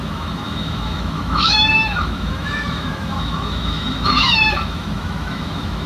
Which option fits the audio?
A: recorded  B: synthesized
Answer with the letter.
B